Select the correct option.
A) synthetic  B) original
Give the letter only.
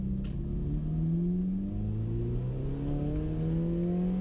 B